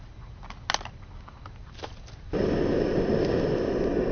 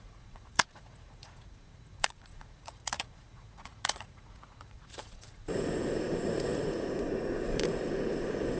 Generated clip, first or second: second